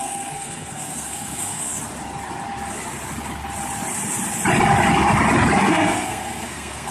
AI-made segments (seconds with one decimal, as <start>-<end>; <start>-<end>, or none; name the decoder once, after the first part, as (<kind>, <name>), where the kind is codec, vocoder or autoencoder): 0.0-1.8 (codec, SNAC); 5.6-6.9